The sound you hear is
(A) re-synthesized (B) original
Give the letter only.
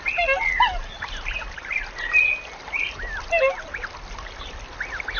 B